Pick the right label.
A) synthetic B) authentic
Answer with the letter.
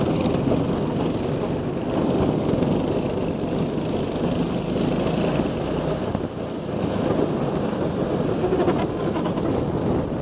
B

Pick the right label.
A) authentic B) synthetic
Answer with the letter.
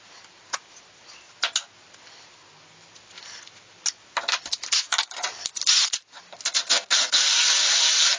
A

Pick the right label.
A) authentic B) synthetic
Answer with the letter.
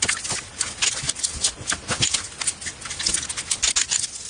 A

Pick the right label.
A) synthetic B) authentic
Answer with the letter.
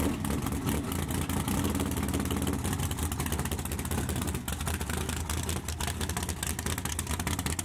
B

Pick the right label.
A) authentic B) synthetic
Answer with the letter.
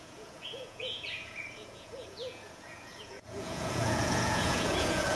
B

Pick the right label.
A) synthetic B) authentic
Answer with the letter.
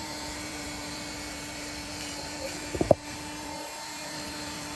A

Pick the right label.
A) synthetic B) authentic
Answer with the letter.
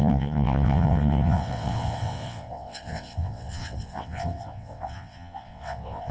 A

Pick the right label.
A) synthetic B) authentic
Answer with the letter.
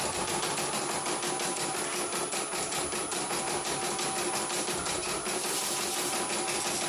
B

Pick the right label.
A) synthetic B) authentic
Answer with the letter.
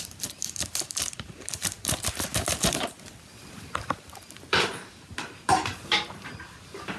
A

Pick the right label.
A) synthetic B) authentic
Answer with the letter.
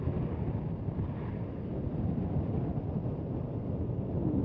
B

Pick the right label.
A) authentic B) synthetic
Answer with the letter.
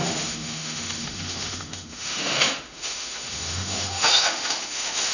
B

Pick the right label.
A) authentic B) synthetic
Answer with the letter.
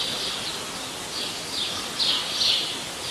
A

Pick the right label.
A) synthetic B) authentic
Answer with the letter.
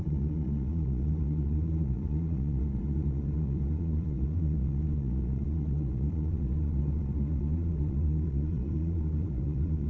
A